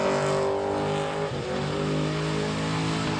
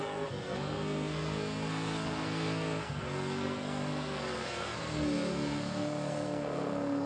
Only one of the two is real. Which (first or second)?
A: first